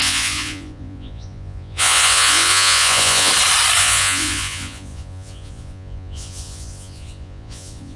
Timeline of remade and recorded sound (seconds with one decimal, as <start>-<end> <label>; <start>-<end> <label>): 0.0-3.3 remade; 3.3-3.8 recorded; 3.8-8.0 remade